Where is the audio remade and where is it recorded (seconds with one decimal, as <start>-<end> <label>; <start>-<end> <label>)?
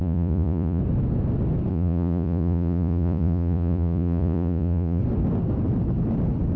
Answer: 0.0-0.8 remade; 0.8-1.7 recorded; 1.7-5.0 remade; 5.0-6.6 recorded